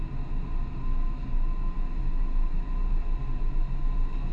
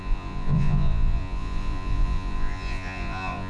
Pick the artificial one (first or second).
second